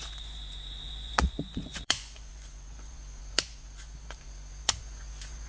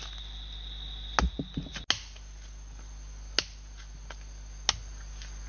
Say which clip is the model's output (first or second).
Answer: first